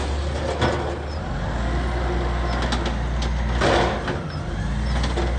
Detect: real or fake real